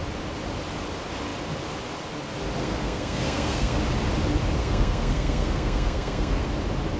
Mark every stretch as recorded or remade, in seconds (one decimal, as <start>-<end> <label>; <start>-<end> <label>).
0.0-2.6 recorded; 2.6-3.8 remade; 3.8-4.6 recorded; 4.6-6.5 remade; 6.5-7.0 recorded